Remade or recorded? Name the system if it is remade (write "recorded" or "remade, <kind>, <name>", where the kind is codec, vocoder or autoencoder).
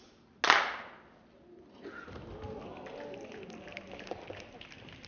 recorded